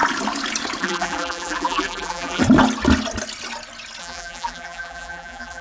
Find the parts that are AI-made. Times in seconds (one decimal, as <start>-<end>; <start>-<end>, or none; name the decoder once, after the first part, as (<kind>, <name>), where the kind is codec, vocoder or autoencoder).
0.8-2.4 (vocoder, BigVGAN v2); 4.0-5.6